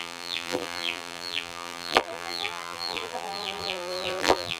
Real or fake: fake